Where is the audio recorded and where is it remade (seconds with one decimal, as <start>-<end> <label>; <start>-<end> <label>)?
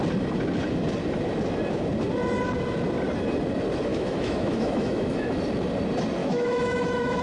0.0-3.9 recorded; 3.9-5.4 remade; 5.4-6.2 recorded; 6.2-7.2 remade